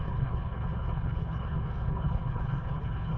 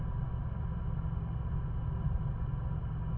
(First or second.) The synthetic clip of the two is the first